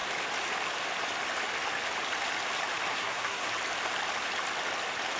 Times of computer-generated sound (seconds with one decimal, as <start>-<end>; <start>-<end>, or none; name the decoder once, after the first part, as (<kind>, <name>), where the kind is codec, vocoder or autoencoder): 2.9-3.5 (codec, SNAC)